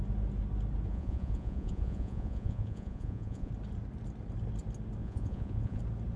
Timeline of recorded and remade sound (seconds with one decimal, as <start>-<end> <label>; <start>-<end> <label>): 0.0-0.9 recorded; 0.9-3.5 remade; 3.5-5.0 recorded; 5.0-5.8 remade; 5.8-6.2 recorded